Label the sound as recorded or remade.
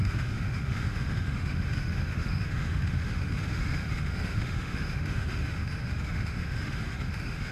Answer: remade